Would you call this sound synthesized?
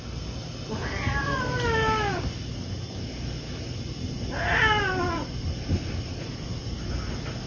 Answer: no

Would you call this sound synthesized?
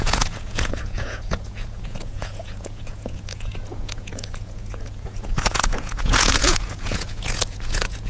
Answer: yes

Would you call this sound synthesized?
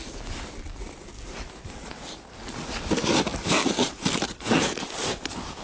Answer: no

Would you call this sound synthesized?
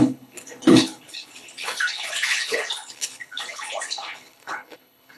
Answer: yes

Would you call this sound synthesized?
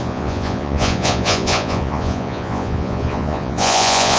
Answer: yes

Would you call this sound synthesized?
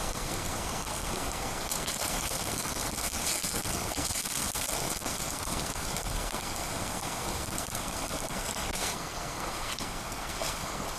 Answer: yes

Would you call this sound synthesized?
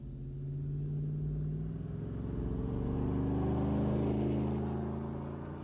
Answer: no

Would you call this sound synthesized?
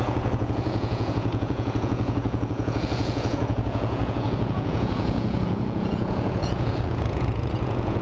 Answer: yes